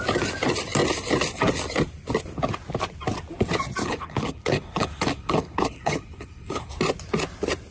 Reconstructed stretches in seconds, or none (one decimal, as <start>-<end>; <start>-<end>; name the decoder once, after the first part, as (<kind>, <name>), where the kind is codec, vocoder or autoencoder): 3.8-6.7 (codec, HILCodec)